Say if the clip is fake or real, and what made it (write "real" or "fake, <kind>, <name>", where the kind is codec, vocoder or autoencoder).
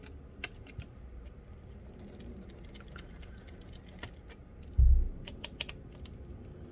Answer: real